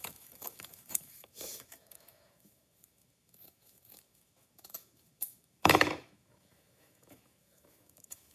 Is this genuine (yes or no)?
no